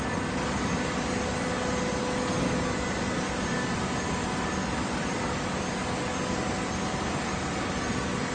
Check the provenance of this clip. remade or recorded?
recorded